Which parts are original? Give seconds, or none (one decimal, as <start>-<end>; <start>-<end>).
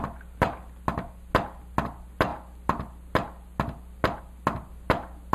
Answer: 0.0-5.3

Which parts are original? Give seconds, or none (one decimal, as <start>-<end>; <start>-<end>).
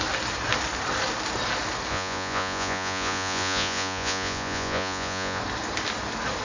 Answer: 0.0-1.9; 5.4-6.4